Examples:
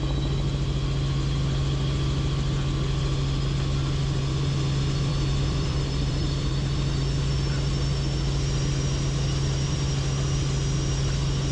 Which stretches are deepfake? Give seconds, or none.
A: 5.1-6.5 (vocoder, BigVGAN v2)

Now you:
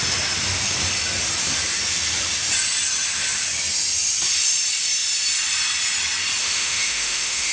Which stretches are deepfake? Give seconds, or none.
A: 6.4-7.5 (autoencoder, DAC-VAE)